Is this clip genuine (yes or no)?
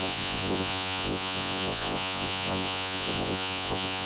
no